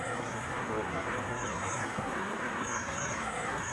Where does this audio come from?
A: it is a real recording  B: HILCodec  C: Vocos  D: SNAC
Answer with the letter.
D